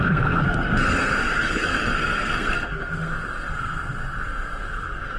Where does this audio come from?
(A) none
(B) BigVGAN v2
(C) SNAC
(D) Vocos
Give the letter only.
C